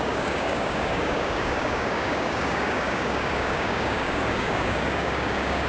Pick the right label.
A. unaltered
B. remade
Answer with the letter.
B